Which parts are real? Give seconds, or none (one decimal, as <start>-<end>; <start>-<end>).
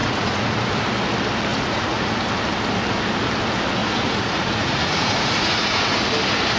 0.8-1.5; 2.3-3.8; 5.9-6.6